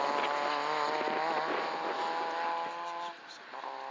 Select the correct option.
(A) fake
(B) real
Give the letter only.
B